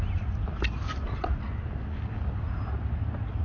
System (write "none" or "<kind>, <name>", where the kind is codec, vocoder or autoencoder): none